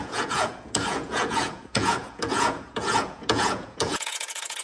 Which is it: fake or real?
fake